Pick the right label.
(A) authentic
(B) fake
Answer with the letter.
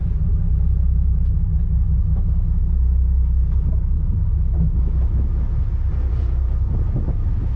A